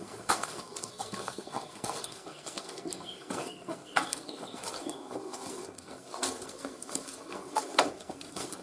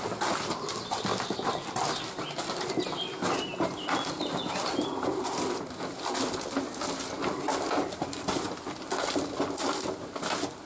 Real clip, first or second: second